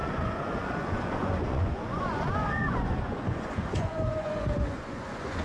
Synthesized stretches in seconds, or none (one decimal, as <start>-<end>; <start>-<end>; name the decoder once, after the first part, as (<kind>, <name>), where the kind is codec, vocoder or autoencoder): 0.0-5.4 (vocoder, Vocos)